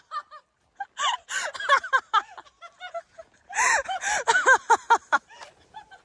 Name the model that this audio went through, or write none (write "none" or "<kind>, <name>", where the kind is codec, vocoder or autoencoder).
none